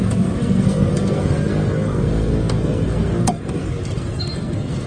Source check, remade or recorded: remade